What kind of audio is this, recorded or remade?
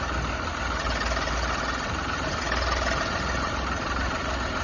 recorded